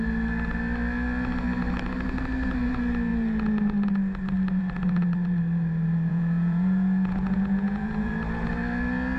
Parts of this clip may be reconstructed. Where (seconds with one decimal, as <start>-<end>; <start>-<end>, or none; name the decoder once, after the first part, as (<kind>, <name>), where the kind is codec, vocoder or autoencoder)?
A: 6.1-8.1 (vocoder, Vocos)